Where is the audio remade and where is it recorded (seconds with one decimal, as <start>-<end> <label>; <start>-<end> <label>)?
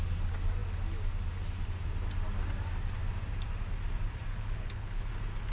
0.0-4.3 recorded; 4.3-5.1 remade; 5.1-5.5 recorded